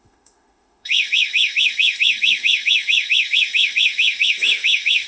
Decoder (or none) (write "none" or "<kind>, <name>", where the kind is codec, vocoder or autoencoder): autoencoder, DAC-VAE